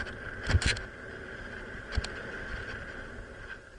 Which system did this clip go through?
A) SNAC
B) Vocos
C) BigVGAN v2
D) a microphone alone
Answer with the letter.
D